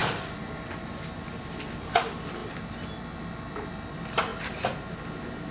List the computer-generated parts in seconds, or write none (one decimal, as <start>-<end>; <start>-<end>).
none